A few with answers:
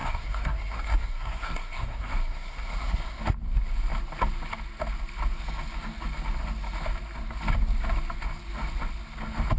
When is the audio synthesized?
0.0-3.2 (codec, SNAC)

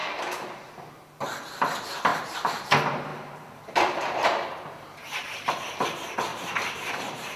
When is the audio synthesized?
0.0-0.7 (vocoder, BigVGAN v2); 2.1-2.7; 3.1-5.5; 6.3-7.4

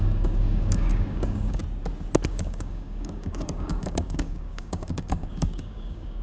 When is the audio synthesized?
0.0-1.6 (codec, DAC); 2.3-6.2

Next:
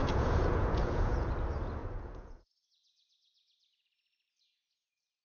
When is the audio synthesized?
0.0-1.3 (vocoder, Vocos); 1.8-2.5

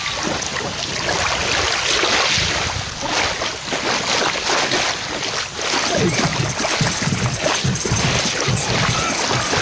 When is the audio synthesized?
none